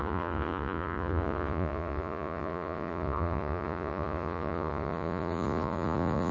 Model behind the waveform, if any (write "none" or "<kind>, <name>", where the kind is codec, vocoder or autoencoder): vocoder, Vocos